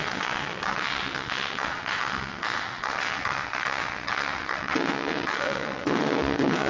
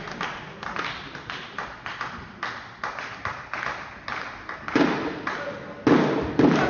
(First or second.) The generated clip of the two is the first